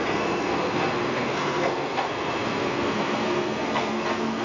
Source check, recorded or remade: remade